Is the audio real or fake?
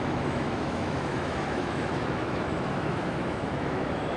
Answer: fake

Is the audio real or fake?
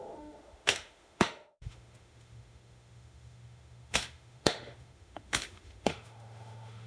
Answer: fake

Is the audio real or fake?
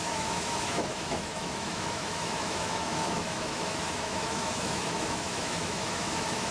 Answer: fake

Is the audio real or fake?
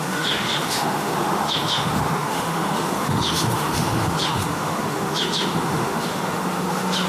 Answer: fake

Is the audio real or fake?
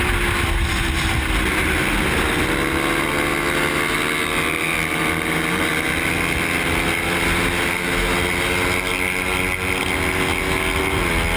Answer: real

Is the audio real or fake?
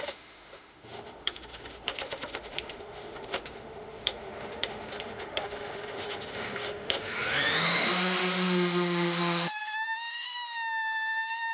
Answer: fake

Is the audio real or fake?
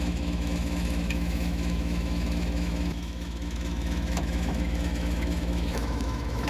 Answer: fake